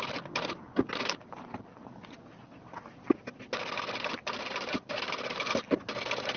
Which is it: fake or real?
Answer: real